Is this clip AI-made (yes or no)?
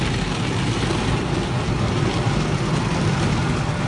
no